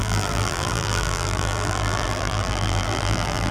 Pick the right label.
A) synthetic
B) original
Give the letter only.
A